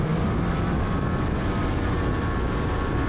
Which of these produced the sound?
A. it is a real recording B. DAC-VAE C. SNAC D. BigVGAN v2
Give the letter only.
A